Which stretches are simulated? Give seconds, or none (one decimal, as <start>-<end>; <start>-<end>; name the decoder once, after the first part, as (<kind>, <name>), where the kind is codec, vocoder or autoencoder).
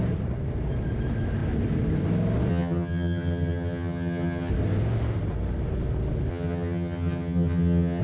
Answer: 2.5-4.5 (vocoder, HiFi-GAN); 6.3-8.0